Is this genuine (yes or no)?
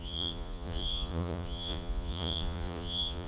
no